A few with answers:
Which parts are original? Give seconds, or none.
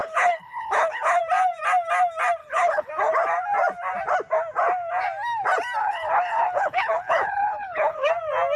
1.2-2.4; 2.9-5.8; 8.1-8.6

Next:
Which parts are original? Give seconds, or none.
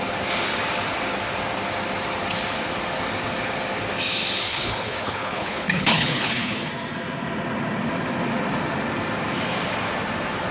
0.0-4.5; 6.7-10.5